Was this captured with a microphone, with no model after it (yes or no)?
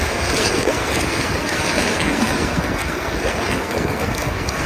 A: no